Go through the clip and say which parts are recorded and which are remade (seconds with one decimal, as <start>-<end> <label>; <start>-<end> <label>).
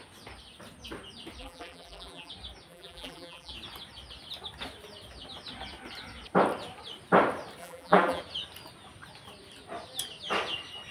0.0-1.4 recorded; 1.4-2.3 remade; 2.3-2.7 recorded; 2.7-3.5 remade; 3.5-7.6 recorded; 7.6-8.2 remade; 8.2-10.9 recorded